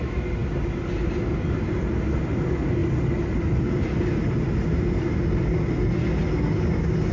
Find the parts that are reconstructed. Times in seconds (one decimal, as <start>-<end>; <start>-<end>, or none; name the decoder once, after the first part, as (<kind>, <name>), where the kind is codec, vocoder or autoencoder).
none